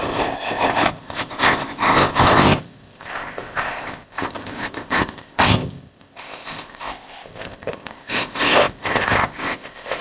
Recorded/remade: remade